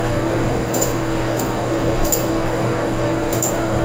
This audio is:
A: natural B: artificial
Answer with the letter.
B